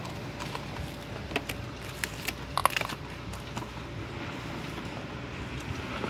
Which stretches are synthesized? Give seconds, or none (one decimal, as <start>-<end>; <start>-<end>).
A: none